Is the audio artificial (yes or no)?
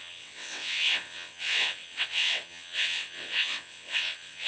yes